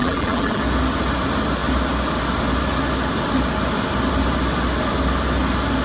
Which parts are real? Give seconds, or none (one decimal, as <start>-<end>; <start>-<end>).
0.6-5.8